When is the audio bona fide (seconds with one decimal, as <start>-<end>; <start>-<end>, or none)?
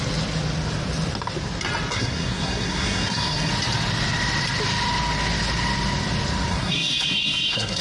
0.0-1.9; 3.5-6.5